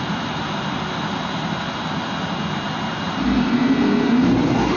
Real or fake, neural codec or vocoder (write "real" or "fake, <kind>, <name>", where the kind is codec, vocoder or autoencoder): real